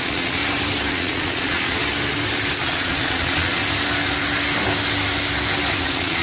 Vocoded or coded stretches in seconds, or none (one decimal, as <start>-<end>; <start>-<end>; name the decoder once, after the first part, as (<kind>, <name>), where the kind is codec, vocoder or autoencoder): 0.0-0.4 (vocoder, Vocos); 0.9-1.8; 2.6-3.6; 5.8-6.2